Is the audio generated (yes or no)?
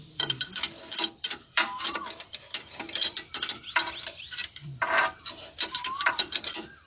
yes